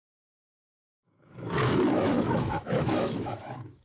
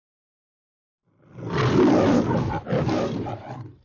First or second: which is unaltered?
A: second